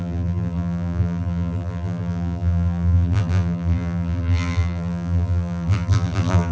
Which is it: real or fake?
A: fake